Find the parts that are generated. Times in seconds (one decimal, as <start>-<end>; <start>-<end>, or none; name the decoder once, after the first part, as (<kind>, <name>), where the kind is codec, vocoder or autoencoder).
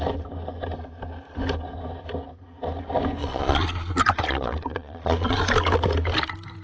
3.2-5.4 (vocoder, Vocos)